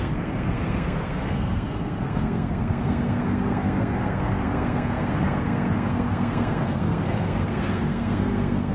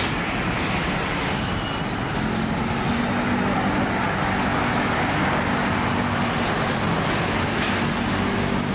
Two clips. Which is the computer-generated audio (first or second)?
first